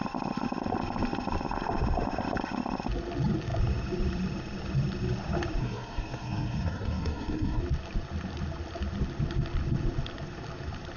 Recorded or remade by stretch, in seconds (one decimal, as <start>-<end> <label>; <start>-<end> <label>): 0.0-5.6 recorded; 5.6-7.6 remade; 7.6-11.0 recorded